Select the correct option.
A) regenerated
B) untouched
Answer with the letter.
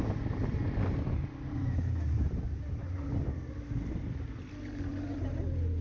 B